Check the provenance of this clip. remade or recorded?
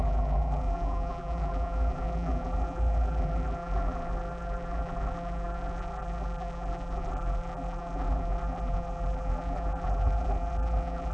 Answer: remade